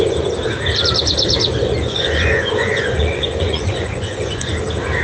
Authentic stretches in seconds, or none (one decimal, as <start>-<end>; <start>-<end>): 0.0-1.5; 4.5-5.0